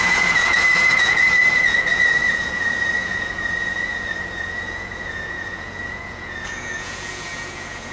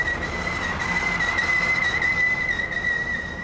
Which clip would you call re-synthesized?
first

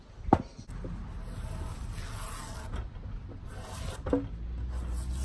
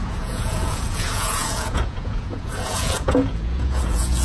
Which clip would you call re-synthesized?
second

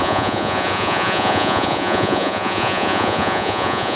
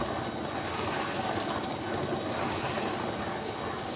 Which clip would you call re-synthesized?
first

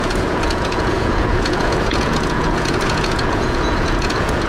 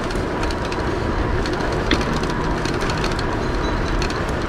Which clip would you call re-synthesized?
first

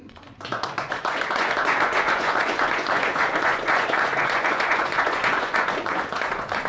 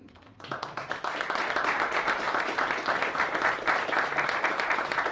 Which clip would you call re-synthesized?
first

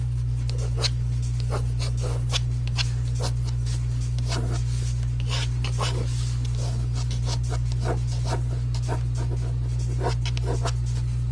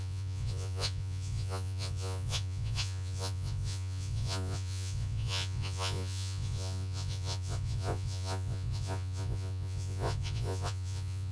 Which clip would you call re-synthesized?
second